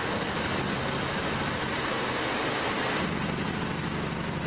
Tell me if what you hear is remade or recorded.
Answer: recorded